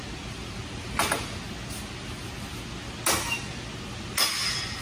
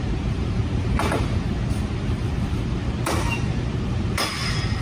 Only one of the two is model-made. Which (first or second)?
second